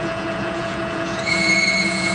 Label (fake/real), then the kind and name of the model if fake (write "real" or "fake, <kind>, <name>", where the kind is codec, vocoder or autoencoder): fake, vocoder, Vocos